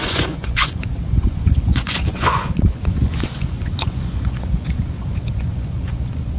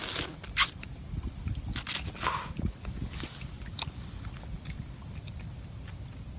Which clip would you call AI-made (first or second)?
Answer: first